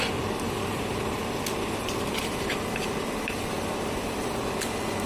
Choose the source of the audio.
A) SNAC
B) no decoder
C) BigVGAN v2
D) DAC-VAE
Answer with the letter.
C